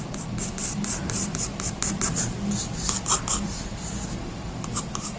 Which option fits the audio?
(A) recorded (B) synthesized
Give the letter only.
A